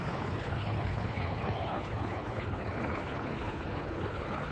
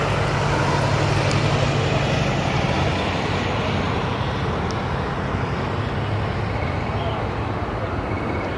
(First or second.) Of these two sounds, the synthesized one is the first